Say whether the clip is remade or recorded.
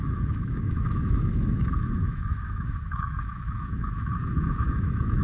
remade